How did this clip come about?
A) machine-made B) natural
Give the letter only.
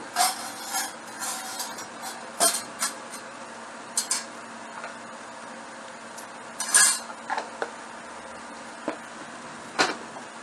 B